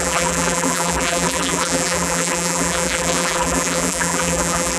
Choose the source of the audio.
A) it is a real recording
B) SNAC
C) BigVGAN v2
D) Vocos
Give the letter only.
C